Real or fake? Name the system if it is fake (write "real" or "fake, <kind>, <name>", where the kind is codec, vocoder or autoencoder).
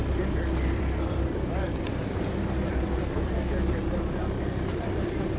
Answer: fake, vocoder, BigVGAN v2